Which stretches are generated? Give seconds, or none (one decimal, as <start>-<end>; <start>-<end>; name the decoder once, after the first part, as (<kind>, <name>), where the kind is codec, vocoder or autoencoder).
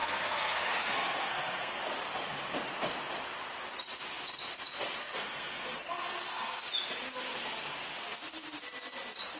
0.0-1.8 (codec, SNAC); 5.0-6.7